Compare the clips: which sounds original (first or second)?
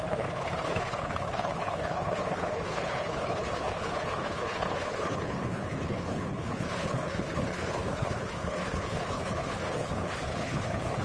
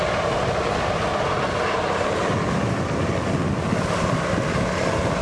second